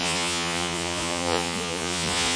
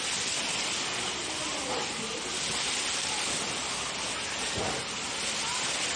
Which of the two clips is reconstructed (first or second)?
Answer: first